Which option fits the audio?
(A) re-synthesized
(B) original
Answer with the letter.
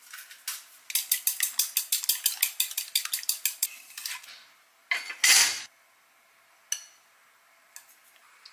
B